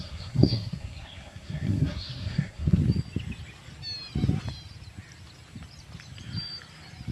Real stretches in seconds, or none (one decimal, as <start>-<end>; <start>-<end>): 2.8-7.1